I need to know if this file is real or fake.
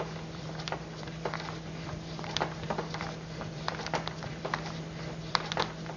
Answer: fake